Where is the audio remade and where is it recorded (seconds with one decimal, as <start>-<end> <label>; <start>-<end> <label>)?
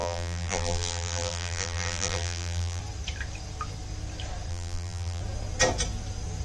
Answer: 0.0-2.8 remade; 2.8-4.5 recorded; 4.5-5.2 remade; 5.2-6.4 recorded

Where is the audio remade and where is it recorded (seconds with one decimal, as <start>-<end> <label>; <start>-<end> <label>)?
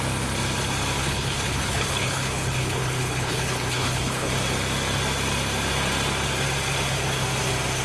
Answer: 0.0-1.0 recorded; 1.0-4.3 remade; 4.3-7.8 recorded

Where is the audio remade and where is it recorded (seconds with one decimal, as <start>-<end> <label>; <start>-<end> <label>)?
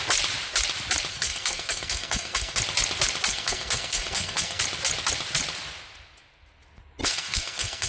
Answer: 0.0-1.1 recorded; 1.1-2.6 remade; 2.6-3.3 recorded; 3.3-4.6 remade; 4.6-7.0 recorded; 7.0-7.9 remade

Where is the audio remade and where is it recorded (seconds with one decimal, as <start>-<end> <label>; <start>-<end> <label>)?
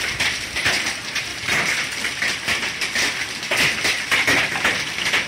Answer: 0.0-1.3 recorded; 1.3-3.2 remade; 3.2-5.3 recorded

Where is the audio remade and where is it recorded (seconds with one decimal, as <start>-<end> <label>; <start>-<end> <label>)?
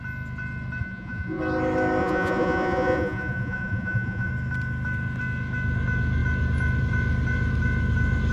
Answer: 0.0-0.8 recorded; 0.8-1.4 remade; 1.4-2.0 recorded; 2.0-4.3 remade; 4.3-8.3 recorded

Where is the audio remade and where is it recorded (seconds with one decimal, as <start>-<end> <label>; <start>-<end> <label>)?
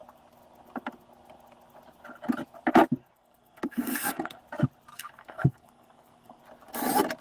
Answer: 0.0-3.0 recorded; 3.0-4.4 remade; 4.4-4.9 recorded; 4.9-6.4 remade; 6.4-7.2 recorded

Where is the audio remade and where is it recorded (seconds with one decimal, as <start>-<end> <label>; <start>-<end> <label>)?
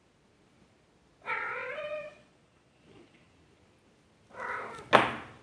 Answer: 0.0-1.3 recorded; 1.3-3.3 remade; 3.3-5.4 recorded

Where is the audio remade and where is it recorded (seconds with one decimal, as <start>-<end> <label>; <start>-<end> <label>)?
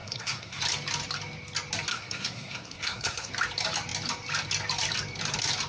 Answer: 0.0-0.6 remade; 0.6-1.9 recorded; 1.9-3.3 remade; 3.3-5.7 recorded